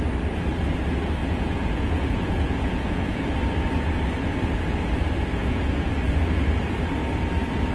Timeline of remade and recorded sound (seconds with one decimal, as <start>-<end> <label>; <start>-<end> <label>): 0.0-1.2 recorded; 1.2-3.2 remade; 3.2-5.4 recorded; 5.4-5.9 remade; 5.9-7.7 recorded